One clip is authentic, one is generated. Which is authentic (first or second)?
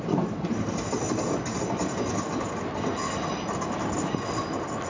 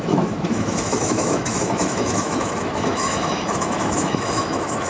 first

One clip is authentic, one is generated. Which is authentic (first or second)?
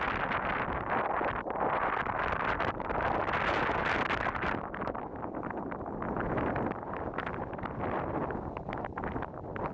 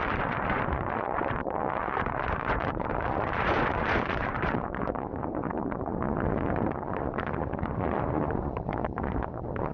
first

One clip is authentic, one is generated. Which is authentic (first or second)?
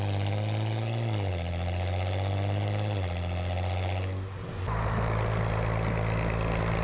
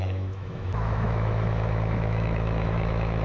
first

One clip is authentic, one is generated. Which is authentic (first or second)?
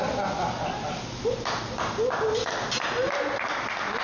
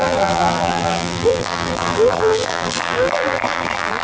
first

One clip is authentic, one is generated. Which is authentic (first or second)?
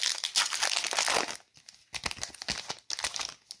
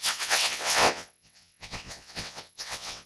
first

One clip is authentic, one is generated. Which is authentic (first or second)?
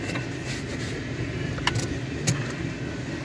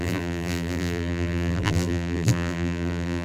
first